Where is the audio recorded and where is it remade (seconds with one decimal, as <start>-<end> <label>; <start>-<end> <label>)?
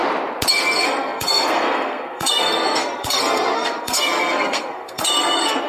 0.0-0.5 recorded; 0.5-5.7 remade